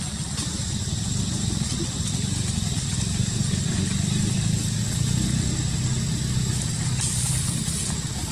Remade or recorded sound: remade